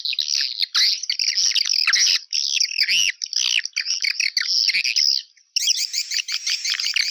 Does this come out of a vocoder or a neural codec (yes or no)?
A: no